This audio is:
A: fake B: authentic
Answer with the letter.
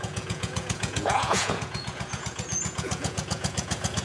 A